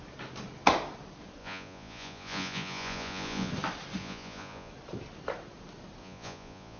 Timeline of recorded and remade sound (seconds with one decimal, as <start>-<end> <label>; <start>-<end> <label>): 0.0-1.4 recorded; 1.4-3.5 remade; 3.5-4.0 recorded; 4.0-4.7 remade; 4.7-6.0 recorded; 6.0-6.8 remade